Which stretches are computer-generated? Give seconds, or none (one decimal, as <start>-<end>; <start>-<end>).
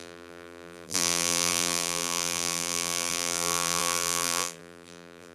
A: 0.0-5.3